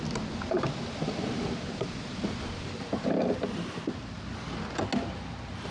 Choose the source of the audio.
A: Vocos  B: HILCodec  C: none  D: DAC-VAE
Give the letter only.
C